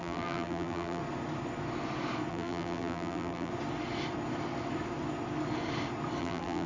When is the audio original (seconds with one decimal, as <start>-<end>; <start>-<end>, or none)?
1.0-2.3; 3.5-6.2